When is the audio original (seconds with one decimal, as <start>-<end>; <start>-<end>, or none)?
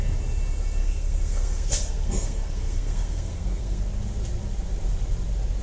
0.0-0.8; 3.8-5.6